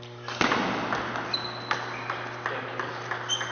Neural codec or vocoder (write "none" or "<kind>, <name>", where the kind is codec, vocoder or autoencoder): none